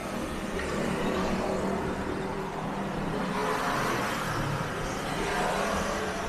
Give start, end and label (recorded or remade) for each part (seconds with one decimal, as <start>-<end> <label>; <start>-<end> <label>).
0.0-0.5 recorded; 0.5-3.4 remade; 3.4-5.4 recorded; 5.4-6.3 remade